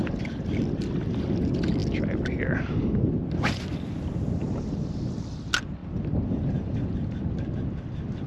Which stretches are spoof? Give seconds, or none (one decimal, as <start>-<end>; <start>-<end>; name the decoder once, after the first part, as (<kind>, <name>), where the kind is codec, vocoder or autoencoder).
none